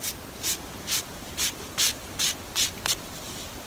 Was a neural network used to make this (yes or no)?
yes